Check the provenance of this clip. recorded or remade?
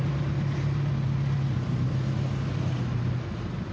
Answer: recorded